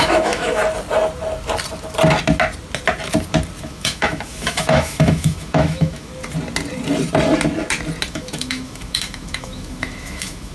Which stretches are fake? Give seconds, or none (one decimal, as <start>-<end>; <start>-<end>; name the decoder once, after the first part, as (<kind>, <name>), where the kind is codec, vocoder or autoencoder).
0.0-0.6 (autoencoder, DAC-VAE); 3.6-6.1; 8.1-10.5